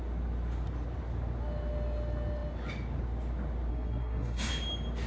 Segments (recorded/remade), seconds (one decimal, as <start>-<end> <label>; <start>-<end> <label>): 0.0-3.7 recorded; 3.7-4.5 remade; 4.5-5.1 recorded